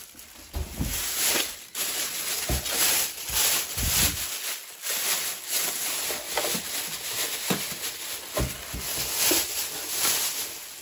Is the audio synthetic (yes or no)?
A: no